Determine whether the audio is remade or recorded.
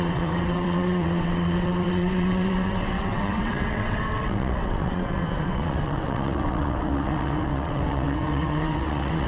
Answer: remade